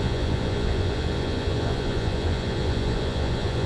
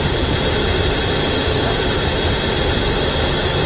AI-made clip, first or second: first